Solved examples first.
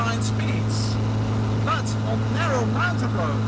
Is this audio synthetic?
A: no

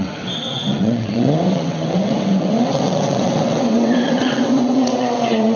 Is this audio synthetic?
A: yes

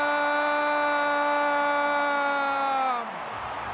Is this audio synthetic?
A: no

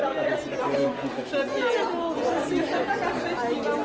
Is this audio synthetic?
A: no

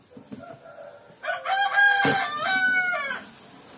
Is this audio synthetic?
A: no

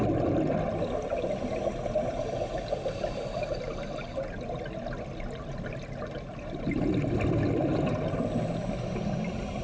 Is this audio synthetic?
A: no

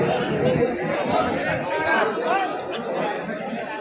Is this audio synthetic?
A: no